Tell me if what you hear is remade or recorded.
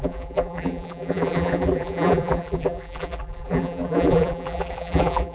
remade